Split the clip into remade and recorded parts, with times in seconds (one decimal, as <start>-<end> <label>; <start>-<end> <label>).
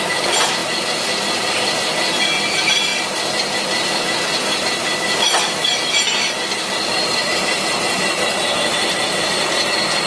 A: 0.0-10.1 recorded